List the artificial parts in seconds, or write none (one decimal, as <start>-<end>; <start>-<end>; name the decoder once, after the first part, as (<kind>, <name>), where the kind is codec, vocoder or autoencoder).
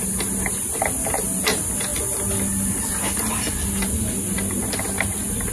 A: none